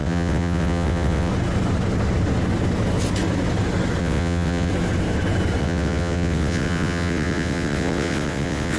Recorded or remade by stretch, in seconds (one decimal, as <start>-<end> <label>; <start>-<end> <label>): 0.0-1.3 remade; 1.3-4.0 recorded; 4.0-4.7 remade; 4.7-5.6 recorded; 5.6-8.8 remade